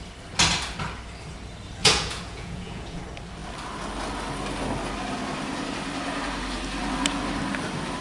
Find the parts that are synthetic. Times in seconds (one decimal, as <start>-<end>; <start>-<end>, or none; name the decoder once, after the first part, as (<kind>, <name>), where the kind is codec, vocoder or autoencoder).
1.8-3.0 (vocoder, Vocos)